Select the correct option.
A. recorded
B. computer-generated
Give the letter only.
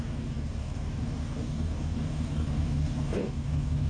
B